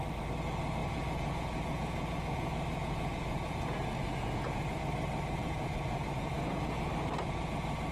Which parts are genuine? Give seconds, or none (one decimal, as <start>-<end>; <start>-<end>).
0.0-0.8; 4.8-5.4; 6.9-7.9

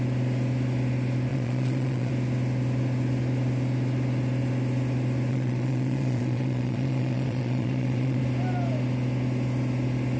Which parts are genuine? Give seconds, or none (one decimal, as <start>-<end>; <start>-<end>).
0.0-1.3; 2.1-5.3; 8.2-10.2

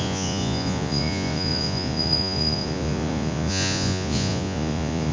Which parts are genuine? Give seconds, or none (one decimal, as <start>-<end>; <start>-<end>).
none

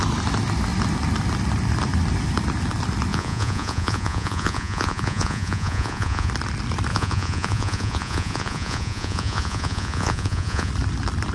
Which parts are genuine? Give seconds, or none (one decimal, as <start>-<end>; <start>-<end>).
0.0-3.1; 6.3-6.9; 10.7-11.3

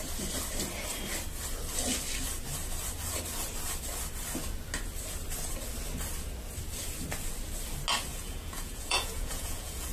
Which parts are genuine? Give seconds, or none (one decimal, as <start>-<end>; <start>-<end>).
0.0-8.1

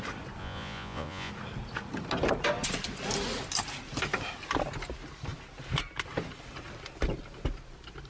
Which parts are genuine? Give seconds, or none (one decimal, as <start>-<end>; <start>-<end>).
0.0-0.4; 1.3-8.1

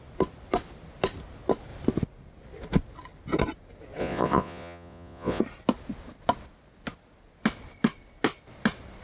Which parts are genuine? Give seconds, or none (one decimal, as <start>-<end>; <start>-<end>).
0.0-4.0; 5.4-9.0